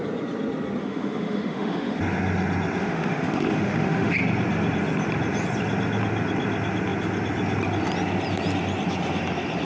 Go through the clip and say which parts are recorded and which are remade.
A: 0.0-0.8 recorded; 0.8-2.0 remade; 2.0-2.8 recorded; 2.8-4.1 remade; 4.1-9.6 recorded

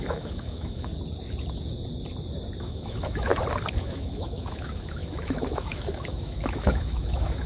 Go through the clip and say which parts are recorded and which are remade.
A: 0.0-0.9 remade; 0.9-2.6 recorded; 2.6-3.3 remade; 3.3-3.8 recorded; 3.8-7.5 remade

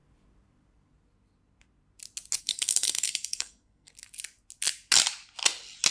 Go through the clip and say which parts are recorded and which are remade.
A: 0.0-2.4 recorded; 2.4-3.9 remade; 3.9-5.9 recorded

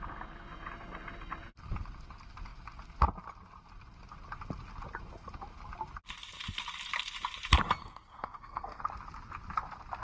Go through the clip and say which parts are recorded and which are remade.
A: 0.0-7.8 recorded; 7.8-8.8 remade; 8.8-10.0 recorded

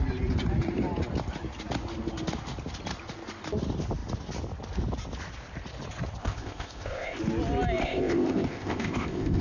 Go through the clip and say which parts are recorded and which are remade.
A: 0.0-6.2 recorded; 6.2-7.2 remade; 7.2-7.8 recorded; 7.8-9.4 remade

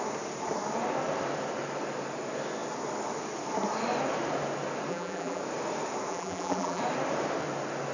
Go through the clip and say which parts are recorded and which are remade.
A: 0.0-4.9 recorded; 4.9-5.4 remade; 5.4-6.1 recorded; 6.1-6.8 remade; 6.8-7.9 recorded

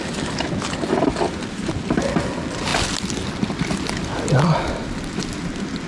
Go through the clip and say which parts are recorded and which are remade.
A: 0.0-5.9 recorded